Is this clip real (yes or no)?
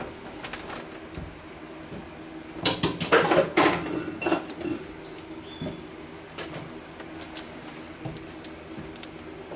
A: yes